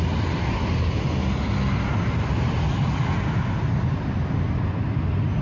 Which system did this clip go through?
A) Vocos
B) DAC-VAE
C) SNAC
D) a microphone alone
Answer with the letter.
D